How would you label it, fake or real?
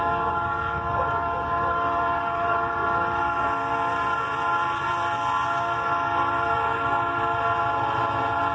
fake